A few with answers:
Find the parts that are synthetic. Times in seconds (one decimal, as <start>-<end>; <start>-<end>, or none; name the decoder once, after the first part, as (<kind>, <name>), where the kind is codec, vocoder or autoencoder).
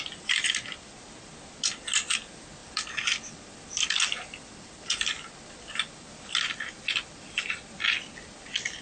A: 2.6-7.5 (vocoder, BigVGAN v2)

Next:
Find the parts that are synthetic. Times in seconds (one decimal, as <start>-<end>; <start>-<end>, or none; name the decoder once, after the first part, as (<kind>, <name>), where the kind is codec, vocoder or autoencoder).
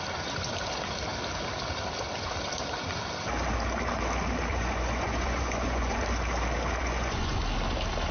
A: 4.5-6.0 (vocoder, Vocos); 6.8-7.4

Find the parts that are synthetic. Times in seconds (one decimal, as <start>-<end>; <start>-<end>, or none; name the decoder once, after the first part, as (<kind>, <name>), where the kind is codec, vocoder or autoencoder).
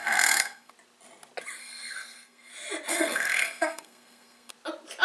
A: 0.0-0.7 (codec, SNAC); 1.6-2.5; 2.9-4.5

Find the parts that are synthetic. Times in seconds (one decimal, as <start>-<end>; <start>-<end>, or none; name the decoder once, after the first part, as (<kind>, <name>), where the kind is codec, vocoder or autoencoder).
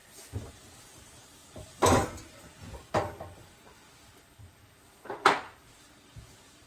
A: 0.5-2.0 (vocoder, BigVGAN v2); 5.8-6.7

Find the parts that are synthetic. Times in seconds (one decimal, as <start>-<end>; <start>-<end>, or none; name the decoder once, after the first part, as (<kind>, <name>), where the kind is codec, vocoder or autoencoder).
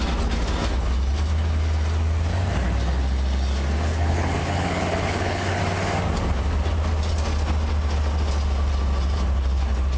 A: 3.9-5.6 (codec, HILCodec)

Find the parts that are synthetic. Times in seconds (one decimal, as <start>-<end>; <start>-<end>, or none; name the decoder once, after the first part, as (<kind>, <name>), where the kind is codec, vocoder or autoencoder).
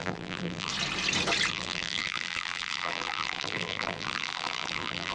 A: 0.0-0.7 (vocoder, BigVGAN v2); 1.5-5.1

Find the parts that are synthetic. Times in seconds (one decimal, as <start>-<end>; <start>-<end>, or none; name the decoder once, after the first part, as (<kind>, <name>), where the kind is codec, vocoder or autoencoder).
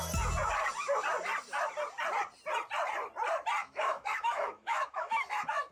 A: 3.6-5.7 (autoencoder, DAC-VAE)